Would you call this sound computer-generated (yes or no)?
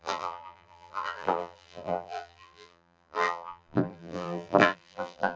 yes